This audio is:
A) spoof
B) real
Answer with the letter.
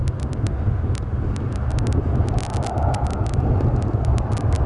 B